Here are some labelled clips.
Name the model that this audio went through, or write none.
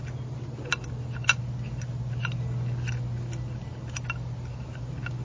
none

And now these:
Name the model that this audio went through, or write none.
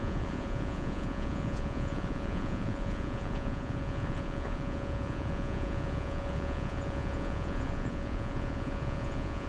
vocoder, Vocos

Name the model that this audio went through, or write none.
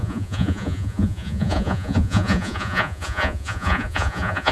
vocoder, Vocos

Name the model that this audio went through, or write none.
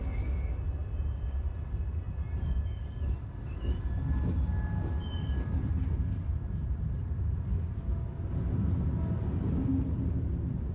none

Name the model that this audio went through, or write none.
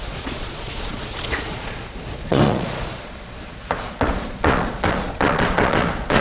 vocoder, Vocos